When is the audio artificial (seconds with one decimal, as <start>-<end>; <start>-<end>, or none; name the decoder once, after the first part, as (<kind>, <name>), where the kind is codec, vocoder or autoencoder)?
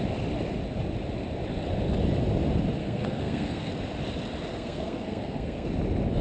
2.8-3.7 (codec, SNAC); 4.5-5.7